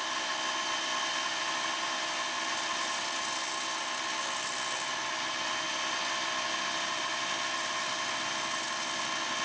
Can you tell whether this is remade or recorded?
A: recorded